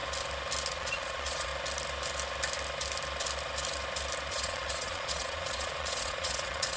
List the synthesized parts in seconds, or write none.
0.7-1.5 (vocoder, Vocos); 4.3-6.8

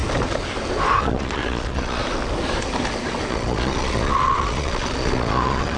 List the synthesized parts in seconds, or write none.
1.0-2.0 (vocoder, Vocos); 3.3-5.8

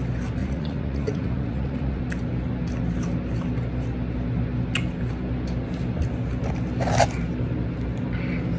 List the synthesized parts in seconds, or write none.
0.4-2.0 (vocoder, Vocos)

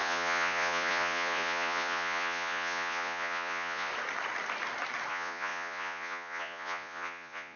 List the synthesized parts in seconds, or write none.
0.0-3.9 (vocoder, Vocos); 5.1-7.6

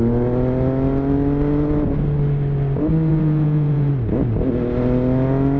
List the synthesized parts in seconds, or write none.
3.1-3.9 (vocoder, Vocos)

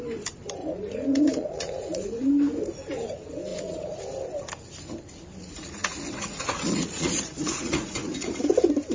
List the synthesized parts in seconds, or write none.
0.6-2.3 (vocoder, Vocos); 3.5-4.0; 5.4-8.3